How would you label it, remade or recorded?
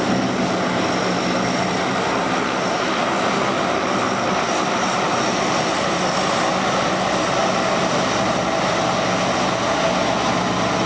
recorded